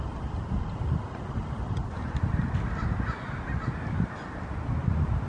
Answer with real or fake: real